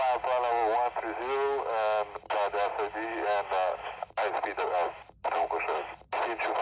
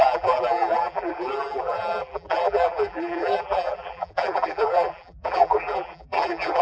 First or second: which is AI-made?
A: second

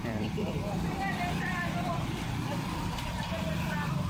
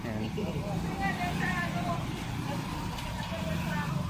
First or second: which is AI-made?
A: first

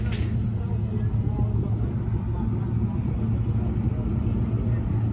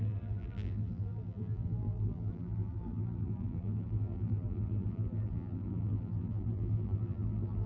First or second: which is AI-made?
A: second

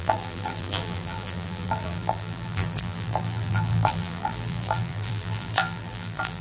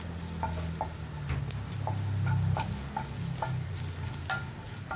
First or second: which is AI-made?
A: first